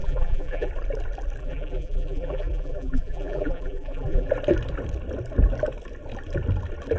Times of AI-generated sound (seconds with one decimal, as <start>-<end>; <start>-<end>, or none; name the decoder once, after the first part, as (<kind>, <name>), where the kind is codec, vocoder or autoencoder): 0.0-0.7 (vocoder, BigVGAN v2); 1.4-4.3

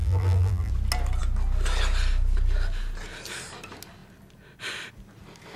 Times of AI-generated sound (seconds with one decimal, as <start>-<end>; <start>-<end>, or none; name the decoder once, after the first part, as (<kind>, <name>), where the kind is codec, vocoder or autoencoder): 0.0-0.7 (vocoder, BigVGAN v2)

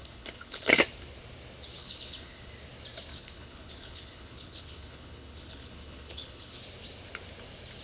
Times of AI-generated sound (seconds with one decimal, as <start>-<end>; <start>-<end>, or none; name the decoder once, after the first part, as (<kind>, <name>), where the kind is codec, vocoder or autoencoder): 0.0-0.7 (codec, HILCodec); 1.8-2.5; 3.1-6.6

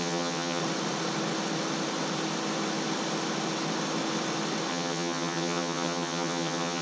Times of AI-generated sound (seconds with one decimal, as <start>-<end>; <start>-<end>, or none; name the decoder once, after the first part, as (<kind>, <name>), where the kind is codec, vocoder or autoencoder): 0.0-0.6 (vocoder, HiFi-GAN); 4.7-6.8

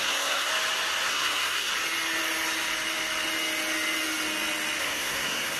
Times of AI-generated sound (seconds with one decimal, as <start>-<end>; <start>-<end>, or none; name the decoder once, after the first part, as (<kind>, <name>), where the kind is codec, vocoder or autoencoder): 0.0-0.5 (codec, SNAC); 1.1-1.7; 4.8-5.6

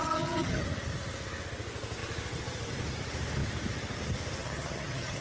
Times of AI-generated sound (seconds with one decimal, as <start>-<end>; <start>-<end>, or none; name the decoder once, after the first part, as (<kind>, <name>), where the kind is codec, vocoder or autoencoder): 0.0-0.6 (vocoder, HiFi-GAN); 4.4-5.2